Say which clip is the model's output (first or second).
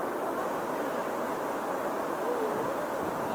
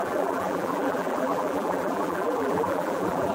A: second